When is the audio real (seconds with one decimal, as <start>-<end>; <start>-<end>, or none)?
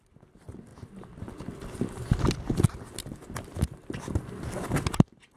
0.0-5.4